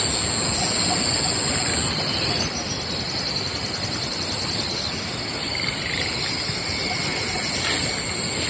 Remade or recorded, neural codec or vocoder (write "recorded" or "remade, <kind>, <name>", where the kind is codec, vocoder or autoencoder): recorded